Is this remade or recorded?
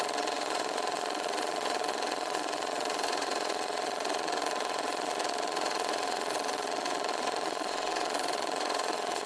remade